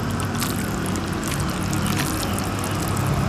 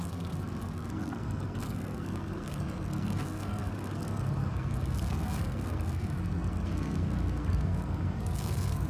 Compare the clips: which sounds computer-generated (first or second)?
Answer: second